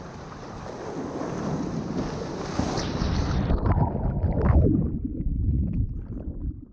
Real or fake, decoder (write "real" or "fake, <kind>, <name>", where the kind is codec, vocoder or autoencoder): real